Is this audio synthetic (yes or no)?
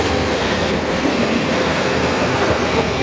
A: yes